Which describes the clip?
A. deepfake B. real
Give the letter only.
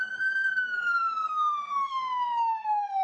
A